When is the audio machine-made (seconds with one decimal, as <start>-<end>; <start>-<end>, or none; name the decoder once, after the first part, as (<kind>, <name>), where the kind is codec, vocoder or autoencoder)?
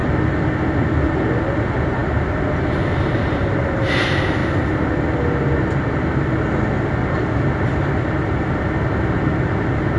0.0-0.5 (vocoder, BigVGAN v2)